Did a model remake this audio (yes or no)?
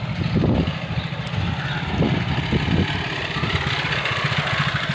no